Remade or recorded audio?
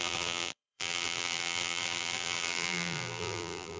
remade